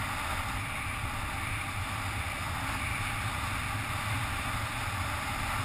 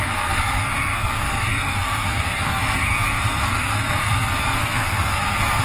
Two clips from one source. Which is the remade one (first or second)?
second